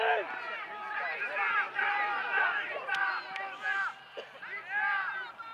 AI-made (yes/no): no